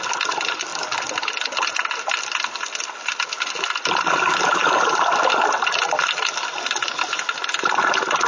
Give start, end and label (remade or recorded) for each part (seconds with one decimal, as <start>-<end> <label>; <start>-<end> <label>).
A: 0.0-8.3 recorded